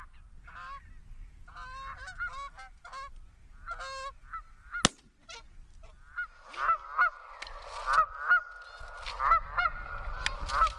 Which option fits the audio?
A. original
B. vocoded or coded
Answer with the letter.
A